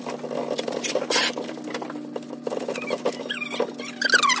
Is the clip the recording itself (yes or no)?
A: yes